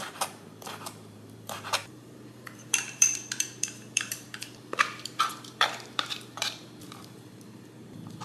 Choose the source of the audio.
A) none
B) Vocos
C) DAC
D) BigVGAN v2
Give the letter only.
D